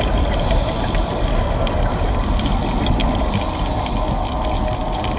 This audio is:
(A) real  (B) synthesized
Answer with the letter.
A